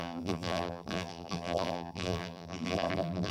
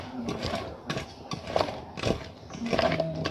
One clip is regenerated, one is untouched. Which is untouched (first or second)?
second